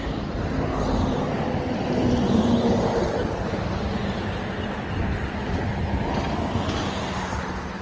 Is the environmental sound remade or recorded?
recorded